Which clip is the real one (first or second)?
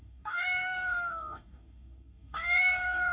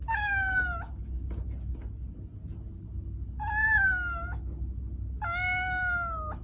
second